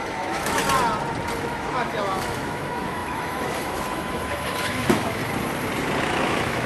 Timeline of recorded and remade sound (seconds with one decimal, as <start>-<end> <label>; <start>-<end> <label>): 0.0-0.6 remade; 0.6-1.4 recorded; 1.4-5.2 remade; 5.2-6.0 recorded; 6.0-6.7 remade